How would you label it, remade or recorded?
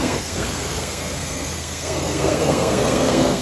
remade